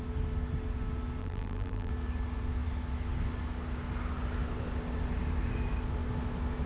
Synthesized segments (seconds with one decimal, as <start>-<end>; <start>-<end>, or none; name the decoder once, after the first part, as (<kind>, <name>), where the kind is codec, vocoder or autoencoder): 1.2-1.9 (vocoder, BigVGAN v2)